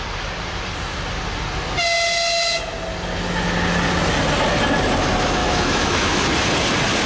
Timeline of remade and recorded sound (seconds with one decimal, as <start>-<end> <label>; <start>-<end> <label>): 0.0-5.4 recorded; 5.4-6.2 remade; 6.2-7.1 recorded